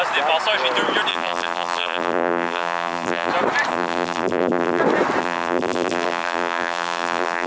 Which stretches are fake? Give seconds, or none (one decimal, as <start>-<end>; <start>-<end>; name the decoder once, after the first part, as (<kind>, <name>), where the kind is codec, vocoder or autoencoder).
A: 1.1-3.3 (vocoder, BigVGAN v2); 3.7-4.8; 5.2-7.5

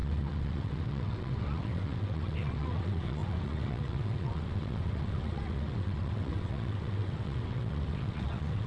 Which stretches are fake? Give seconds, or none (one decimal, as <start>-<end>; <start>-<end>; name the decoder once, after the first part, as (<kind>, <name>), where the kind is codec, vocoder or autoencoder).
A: 0.0-8.7 (vocoder, WaveNeXt)

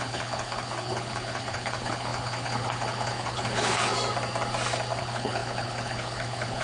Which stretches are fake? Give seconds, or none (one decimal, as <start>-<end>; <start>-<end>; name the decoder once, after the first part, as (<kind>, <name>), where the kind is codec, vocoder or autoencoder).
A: 0.0-3.9 (codec, HILCodec); 5.0-6.6

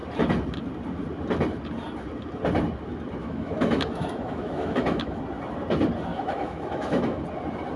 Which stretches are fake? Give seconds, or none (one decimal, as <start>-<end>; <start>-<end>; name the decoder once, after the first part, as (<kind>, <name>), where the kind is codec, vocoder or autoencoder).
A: 3.2-5.2 (autoencoder, DAC-VAE); 6.1-7.2

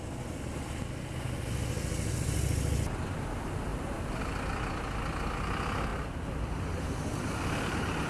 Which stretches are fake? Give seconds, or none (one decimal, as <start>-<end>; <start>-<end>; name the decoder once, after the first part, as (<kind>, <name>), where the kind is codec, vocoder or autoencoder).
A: 3.7-4.2 (vocoder, BigVGAN v2); 5.9-8.1

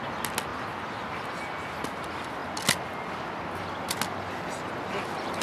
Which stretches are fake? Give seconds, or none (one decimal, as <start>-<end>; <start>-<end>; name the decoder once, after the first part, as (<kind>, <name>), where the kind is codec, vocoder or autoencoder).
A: none

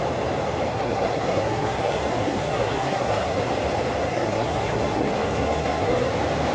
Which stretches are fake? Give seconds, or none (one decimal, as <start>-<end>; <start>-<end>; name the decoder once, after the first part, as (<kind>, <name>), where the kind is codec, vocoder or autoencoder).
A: 0.7-3.5 (codec, SNAC); 4.0-6.1

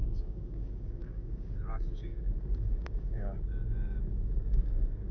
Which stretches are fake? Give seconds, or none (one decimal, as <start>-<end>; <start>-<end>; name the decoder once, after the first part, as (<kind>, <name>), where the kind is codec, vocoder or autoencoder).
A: 0.0-5.1 (codec, DAC)